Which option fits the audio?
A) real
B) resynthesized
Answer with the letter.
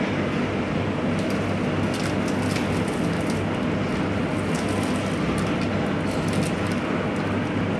A